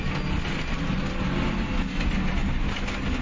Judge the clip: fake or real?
real